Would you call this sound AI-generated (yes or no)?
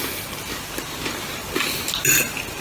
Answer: no